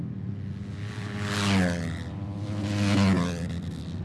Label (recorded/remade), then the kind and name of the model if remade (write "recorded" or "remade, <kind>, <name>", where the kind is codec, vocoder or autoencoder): recorded